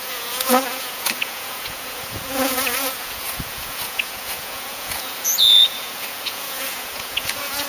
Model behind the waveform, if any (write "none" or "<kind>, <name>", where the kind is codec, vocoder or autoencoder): vocoder, Vocos